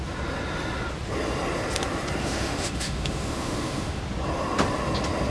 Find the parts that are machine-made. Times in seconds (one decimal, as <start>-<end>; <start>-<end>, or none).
2.2-4.0